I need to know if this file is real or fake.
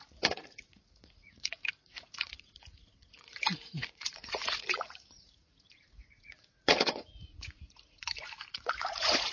fake